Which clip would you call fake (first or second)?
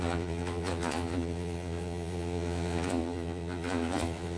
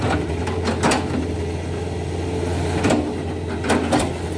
first